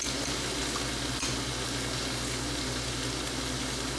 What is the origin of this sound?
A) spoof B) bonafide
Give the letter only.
B